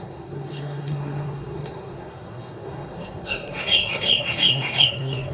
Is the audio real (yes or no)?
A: no